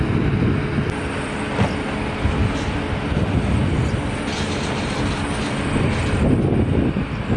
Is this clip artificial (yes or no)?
no